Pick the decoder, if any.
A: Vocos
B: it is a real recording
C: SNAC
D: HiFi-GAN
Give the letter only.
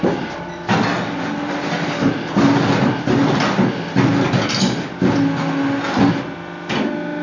B